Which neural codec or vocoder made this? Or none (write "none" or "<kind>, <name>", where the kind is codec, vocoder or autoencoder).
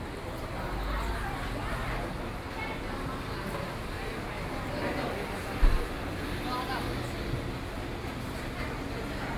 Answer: none